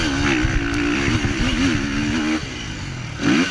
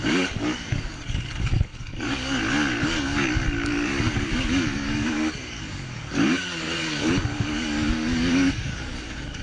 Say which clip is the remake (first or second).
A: second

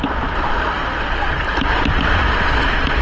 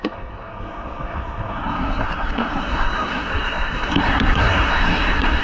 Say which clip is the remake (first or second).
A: second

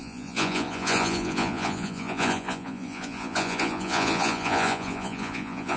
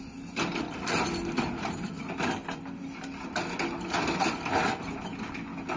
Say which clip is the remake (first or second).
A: first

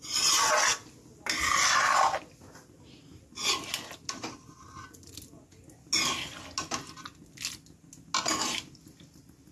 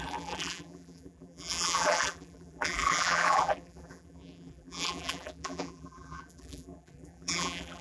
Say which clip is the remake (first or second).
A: second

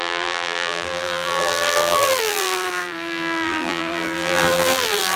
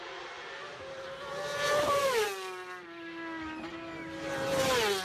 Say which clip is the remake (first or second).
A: first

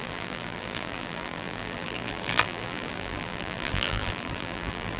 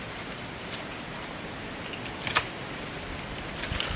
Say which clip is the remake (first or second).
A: first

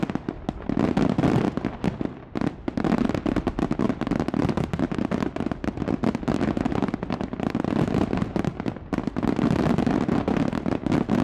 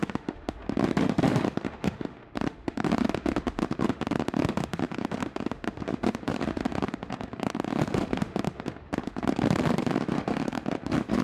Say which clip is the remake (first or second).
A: second